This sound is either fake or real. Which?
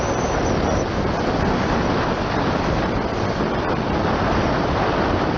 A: real